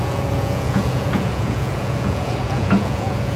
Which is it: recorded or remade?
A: remade